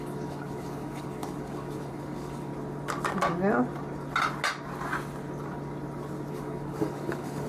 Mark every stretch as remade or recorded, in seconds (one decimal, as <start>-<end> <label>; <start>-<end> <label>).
0.0-2.5 remade; 2.5-6.3 recorded; 6.3-7.5 remade